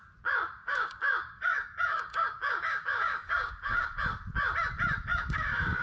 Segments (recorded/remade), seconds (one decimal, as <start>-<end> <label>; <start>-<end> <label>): 0.0-0.6 recorded; 0.6-4.0 remade; 4.0-5.1 recorded; 5.1-5.8 remade